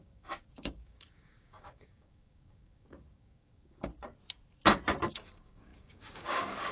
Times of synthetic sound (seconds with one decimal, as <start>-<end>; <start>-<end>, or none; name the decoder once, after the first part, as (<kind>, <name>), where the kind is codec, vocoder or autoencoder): 0.0-3.9 (codec, DAC); 5.1-6.7